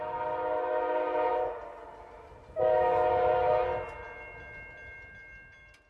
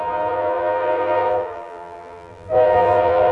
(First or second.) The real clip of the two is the first